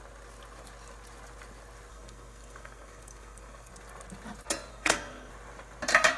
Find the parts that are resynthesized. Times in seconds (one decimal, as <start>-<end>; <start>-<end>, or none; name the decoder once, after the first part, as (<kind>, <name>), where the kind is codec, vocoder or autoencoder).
1.9-3.7 (codec, SNAC); 4.7-5.3

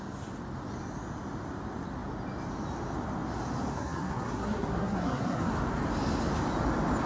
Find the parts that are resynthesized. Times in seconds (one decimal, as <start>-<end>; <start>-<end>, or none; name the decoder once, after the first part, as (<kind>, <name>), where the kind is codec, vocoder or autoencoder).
3.7-5.5 (codec, SNAC)

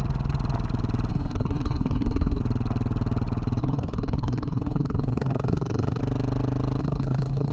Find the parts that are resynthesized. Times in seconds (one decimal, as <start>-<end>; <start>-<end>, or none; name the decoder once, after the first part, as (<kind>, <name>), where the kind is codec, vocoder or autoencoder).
1.1-2.4 (codec, SNAC); 3.6-6.0; 6.8-7.5

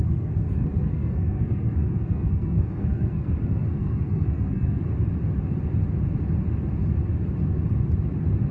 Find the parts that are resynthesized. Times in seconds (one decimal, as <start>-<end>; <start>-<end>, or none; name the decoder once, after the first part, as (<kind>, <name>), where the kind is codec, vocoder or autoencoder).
0.0-4.8 (codec, SNAC)

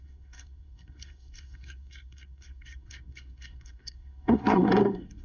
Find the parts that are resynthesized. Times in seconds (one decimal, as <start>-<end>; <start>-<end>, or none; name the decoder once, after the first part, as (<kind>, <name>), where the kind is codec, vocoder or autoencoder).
0.0-5.2 (codec, SNAC)